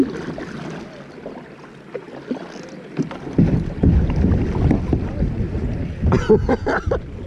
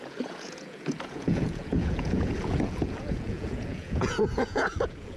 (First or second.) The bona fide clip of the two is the first